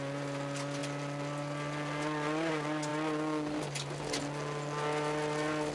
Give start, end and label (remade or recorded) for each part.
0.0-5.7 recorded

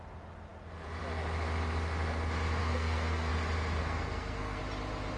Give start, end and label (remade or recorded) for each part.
0.0-2.6 recorded; 2.6-3.3 remade; 3.3-3.8 recorded; 3.8-4.6 remade; 4.6-5.2 recorded

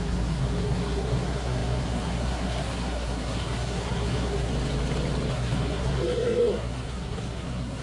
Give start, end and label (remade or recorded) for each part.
0.0-4.5 remade; 4.5-5.3 recorded; 5.3-7.8 remade

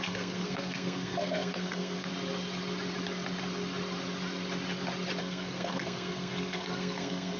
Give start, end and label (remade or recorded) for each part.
0.0-2.1 remade; 2.1-5.2 recorded; 5.2-7.4 remade

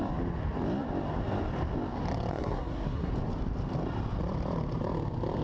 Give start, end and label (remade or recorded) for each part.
0.0-2.3 recorded; 2.3-3.1 remade; 3.1-5.4 recorded